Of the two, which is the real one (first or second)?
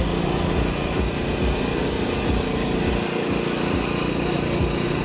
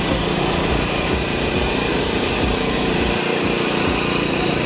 first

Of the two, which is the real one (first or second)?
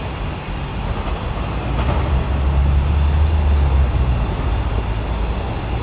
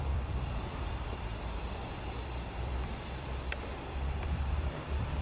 first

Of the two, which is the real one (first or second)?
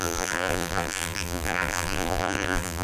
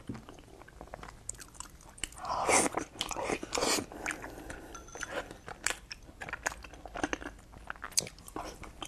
second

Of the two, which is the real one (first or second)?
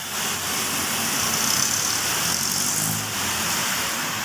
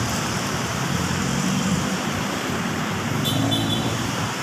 first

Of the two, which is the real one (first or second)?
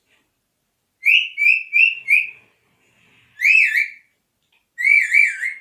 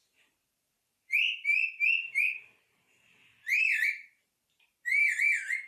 first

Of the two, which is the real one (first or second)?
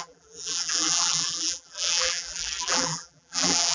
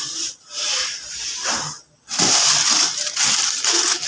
second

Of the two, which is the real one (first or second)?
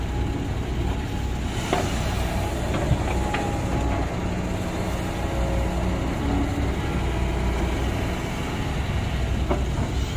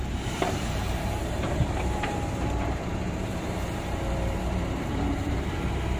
first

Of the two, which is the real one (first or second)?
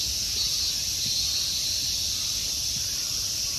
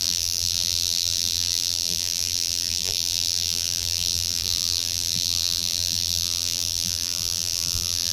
first